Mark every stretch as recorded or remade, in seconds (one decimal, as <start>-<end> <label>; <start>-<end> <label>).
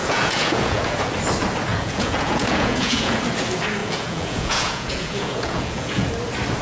0.0-1.1 remade; 1.1-1.7 recorded; 1.7-3.2 remade; 3.2-3.8 recorded; 3.8-6.1 remade; 6.1-6.6 recorded